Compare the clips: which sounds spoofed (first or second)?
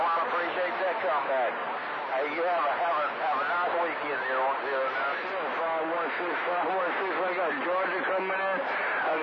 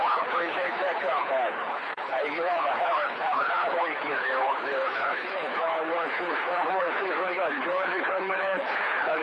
second